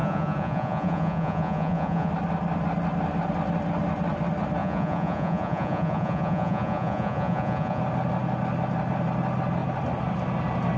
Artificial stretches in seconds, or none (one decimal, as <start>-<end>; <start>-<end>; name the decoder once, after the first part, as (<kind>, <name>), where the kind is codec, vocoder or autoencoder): 0.0-2.1 (vocoder, Vocos); 4.6-7.8